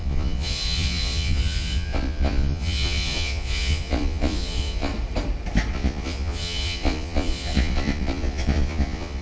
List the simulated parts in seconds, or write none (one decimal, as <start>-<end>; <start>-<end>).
0.0-4.9; 5.7-9.2